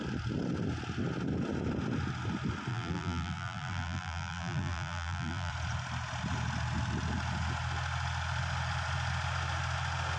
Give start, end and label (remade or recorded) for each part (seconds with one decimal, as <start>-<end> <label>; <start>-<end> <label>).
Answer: 0.0-2.7 recorded; 2.7-5.5 remade; 5.5-10.2 recorded